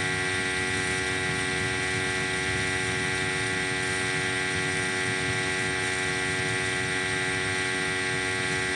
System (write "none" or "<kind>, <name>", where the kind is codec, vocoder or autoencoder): none